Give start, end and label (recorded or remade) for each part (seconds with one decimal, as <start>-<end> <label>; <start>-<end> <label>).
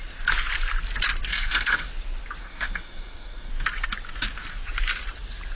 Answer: 0.0-1.3 recorded; 1.3-1.9 remade; 1.9-2.4 recorded; 2.4-3.5 remade; 3.5-5.6 recorded